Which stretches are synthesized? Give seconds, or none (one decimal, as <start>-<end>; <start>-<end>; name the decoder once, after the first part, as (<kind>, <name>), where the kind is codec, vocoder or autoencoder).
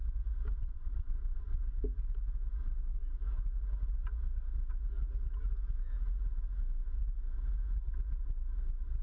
0.6-1.6 (vocoder, Vocos)